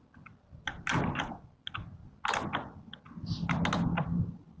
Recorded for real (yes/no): yes